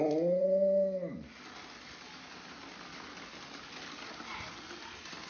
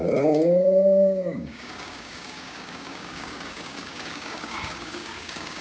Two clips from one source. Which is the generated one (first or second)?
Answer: second